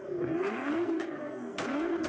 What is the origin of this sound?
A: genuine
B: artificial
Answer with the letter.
B